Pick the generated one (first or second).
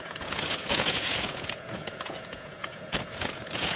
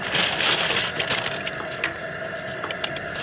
first